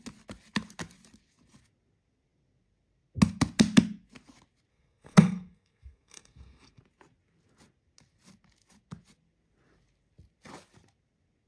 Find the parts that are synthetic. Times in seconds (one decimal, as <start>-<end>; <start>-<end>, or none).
4.7-6.8